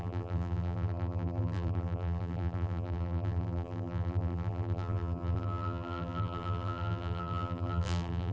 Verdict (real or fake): fake